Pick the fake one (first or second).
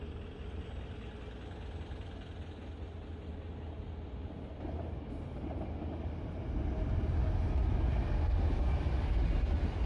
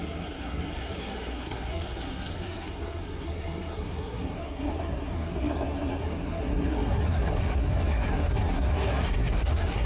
second